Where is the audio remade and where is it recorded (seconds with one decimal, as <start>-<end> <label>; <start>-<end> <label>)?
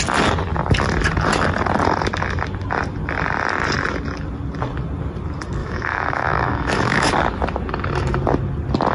0.0-5.6 recorded; 5.6-7.1 remade; 7.1-8.9 recorded